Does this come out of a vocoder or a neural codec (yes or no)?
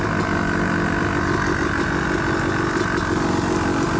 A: no